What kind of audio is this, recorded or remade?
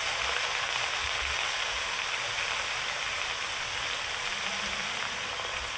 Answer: recorded